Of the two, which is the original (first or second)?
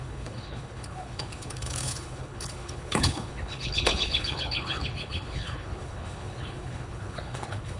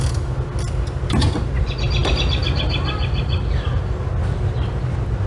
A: second